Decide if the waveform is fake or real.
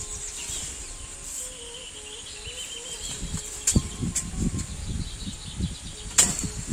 real